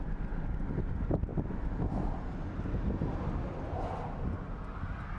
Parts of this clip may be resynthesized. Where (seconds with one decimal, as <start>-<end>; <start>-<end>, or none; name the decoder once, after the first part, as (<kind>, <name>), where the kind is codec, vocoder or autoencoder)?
1.3-3.1 (vocoder, BigVGAN v2)